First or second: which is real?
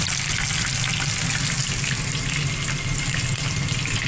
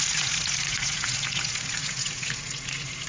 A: first